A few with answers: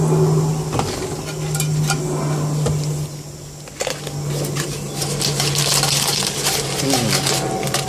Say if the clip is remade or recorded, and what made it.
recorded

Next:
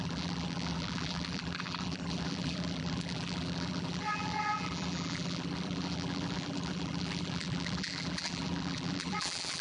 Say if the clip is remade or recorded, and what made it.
remade, vocoder, BigVGAN v2